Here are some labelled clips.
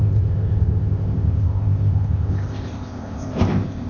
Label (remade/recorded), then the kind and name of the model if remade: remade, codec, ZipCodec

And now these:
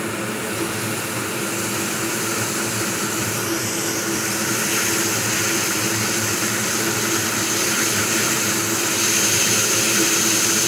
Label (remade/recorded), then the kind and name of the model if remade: recorded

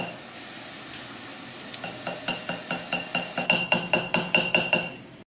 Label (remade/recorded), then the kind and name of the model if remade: recorded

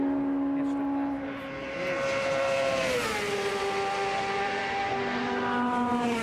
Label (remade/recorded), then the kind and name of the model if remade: recorded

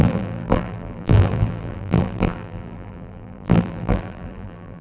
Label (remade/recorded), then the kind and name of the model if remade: remade, vocoder, BigVGAN v2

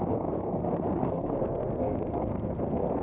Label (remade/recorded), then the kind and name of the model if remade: remade, codec, SNAC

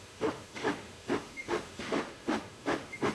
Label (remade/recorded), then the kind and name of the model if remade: remade, autoencoder, DAC-VAE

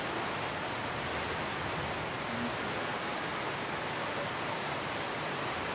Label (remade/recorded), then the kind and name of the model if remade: recorded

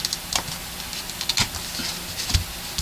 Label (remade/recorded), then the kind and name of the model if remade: recorded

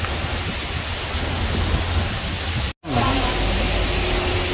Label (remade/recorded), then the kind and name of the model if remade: recorded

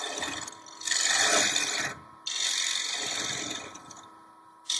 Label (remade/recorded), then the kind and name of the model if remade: recorded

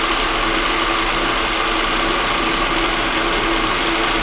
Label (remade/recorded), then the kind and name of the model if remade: recorded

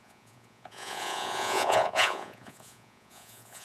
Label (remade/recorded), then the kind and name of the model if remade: remade, vocoder, Vocos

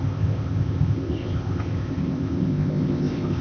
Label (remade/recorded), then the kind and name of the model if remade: remade, codec, ZipCodec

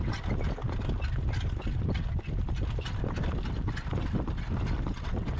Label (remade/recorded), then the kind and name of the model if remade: recorded